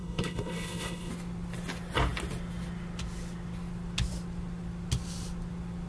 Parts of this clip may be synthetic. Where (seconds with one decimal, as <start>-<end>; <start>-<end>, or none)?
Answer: 0.0-1.1